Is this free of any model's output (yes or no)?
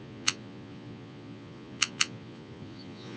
no